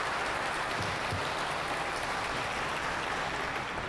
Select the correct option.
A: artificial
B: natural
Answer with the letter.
B